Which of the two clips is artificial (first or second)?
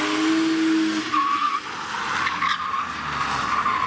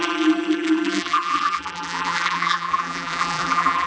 second